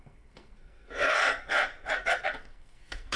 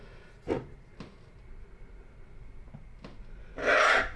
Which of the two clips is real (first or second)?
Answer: second